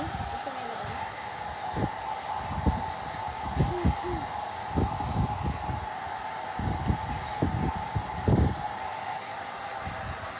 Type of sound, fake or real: real